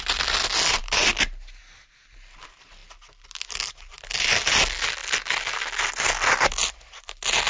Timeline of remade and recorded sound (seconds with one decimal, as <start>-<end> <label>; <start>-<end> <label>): 0.0-7.5 recorded